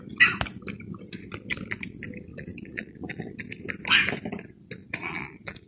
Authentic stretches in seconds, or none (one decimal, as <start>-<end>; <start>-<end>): 0.0-2.3; 3.3-4.8